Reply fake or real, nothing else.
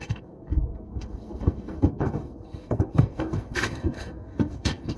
fake